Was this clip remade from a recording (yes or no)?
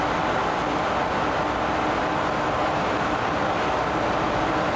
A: no